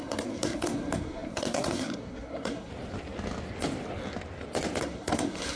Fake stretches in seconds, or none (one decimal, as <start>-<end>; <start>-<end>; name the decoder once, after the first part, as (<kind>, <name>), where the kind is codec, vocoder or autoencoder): 0.0-2.7 (codec, SNAC); 4.8-5.6